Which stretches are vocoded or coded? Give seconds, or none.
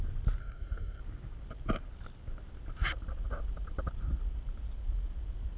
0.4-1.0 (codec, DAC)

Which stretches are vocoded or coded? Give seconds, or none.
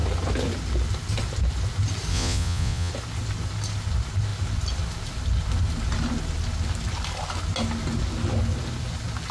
2.1-2.9 (vocoder, Vocos)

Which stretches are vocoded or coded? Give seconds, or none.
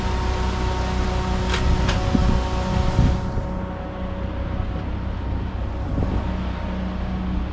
none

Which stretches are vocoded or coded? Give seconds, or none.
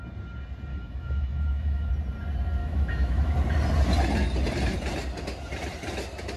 0.7-1.9 (autoencoder, DAC-VAE); 2.6-3.3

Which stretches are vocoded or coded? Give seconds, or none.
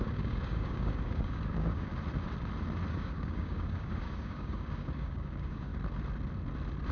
0.0-1.9 (codec, DAC); 2.9-5.7